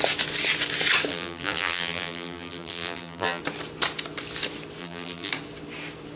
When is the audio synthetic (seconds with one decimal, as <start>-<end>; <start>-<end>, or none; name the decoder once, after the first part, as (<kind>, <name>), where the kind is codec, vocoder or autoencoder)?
1.1-3.4 (vocoder, BigVGAN v2); 4.8-5.3